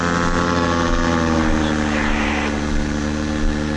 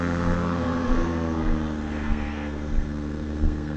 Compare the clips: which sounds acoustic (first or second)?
first